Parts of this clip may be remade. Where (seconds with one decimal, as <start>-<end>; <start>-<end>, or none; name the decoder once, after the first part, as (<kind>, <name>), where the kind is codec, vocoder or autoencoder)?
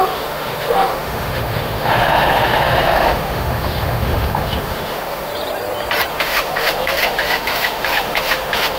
0.0-5.3 (autoencoder, DAC-VAE); 6.1-8.8